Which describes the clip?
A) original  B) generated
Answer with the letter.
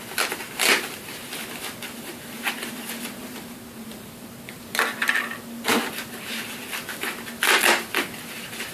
A